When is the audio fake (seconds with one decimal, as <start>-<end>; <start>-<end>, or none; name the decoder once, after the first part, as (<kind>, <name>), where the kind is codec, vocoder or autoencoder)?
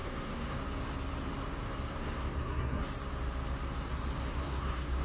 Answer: 0.0-0.6 (codec, SNAC); 1.9-2.8; 4.3-5.0